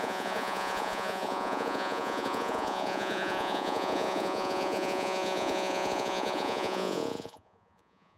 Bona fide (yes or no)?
no